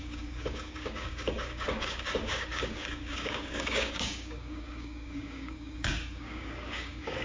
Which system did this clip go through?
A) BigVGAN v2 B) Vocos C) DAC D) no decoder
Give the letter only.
C